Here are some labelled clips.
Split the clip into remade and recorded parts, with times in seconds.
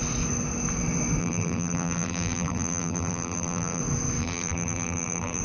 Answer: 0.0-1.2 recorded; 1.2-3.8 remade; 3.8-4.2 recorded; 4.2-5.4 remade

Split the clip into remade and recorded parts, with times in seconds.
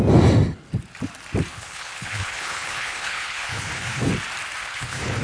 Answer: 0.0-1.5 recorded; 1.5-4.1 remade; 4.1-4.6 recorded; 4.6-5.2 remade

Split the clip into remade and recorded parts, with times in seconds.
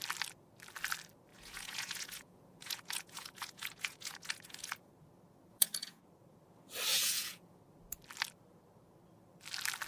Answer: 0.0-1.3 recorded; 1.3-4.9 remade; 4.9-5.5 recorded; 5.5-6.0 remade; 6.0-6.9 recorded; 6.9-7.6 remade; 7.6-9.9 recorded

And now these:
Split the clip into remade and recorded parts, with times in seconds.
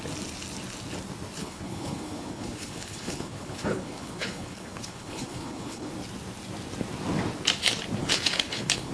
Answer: 0.0-1.4 recorded; 1.4-5.9 remade; 5.9-8.0 recorded; 8.0-8.9 remade